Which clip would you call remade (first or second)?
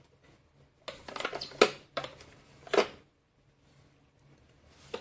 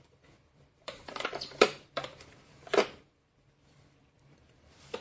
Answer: second